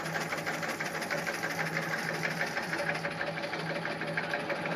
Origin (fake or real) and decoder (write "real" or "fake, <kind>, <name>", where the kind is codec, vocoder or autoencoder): real